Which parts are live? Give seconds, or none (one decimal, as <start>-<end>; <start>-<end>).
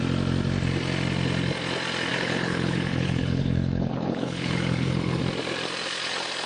0.0-2.1; 5.2-6.5